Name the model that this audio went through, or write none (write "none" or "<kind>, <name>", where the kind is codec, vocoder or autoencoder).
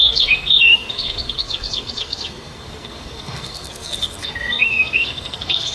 codec, SNAC